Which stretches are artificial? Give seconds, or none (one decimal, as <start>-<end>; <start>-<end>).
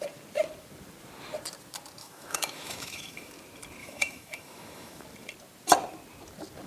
2.0-3.3; 3.8-5.0